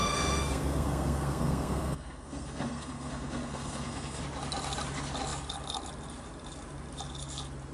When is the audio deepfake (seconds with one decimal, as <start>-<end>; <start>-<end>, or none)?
0.0-4.2